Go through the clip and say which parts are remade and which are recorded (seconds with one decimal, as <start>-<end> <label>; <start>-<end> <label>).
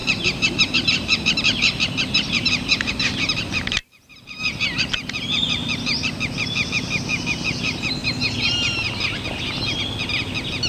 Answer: 0.0-2.9 remade; 2.9-3.8 recorded; 3.8-4.4 remade; 4.4-8.0 recorded; 8.0-8.9 remade; 8.9-10.7 recorded